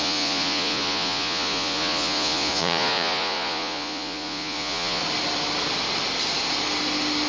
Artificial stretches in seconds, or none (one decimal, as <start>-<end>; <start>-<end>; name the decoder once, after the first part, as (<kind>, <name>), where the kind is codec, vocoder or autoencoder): 0.0-5.0 (vocoder, Vocos)